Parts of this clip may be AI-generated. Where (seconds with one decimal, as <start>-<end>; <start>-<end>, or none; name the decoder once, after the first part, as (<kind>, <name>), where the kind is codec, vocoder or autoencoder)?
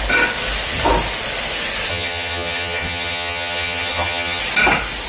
1.9-4.4 (vocoder, HiFi-GAN)